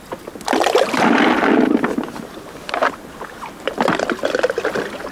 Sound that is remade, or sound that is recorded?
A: recorded